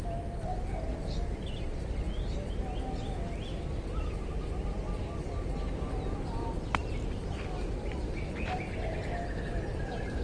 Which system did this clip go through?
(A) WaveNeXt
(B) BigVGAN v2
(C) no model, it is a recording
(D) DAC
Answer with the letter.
C